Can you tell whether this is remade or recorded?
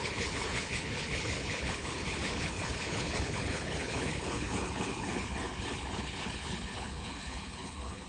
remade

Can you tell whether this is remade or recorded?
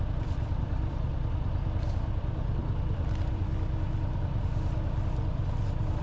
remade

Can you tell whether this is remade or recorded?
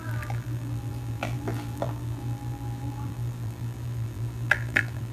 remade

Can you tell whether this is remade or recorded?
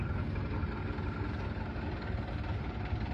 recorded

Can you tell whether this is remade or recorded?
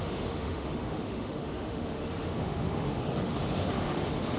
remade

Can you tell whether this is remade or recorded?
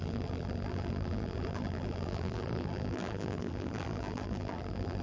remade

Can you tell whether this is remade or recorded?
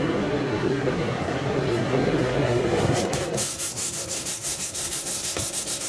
remade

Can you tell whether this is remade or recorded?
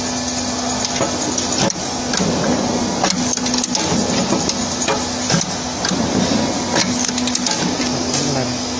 recorded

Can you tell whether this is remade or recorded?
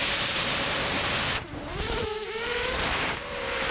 remade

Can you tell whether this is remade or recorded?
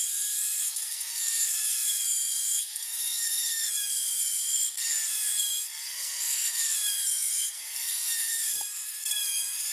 remade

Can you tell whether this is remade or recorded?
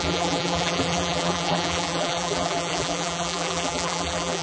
remade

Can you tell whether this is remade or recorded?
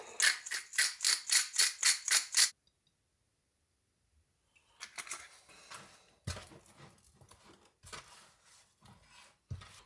recorded